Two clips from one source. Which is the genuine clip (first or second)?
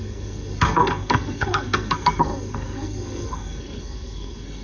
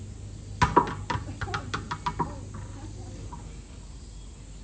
second